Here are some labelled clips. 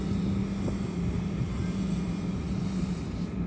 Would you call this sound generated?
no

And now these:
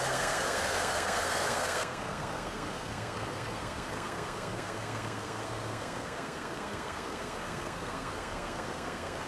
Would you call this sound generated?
yes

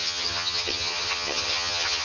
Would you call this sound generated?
yes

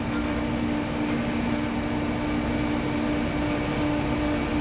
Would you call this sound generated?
no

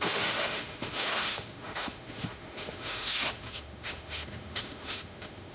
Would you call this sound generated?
yes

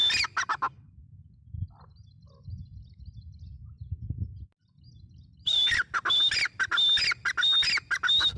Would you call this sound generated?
no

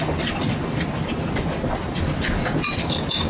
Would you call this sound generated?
no